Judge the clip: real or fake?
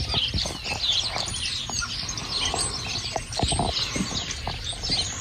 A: real